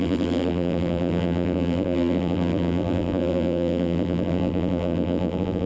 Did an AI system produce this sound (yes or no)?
yes